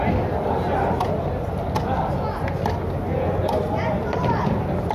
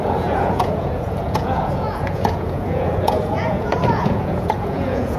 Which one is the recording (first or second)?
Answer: first